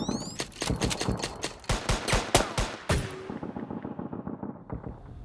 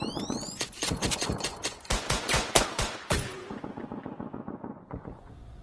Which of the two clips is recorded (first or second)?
first